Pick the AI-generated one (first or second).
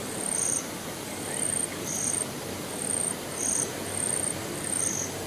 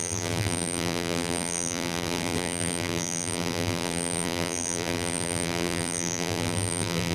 second